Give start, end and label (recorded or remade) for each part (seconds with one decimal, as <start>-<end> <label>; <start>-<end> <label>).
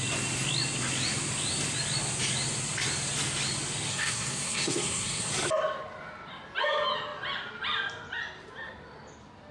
0.0-3.9 recorded; 3.9-5.3 remade; 5.3-9.5 recorded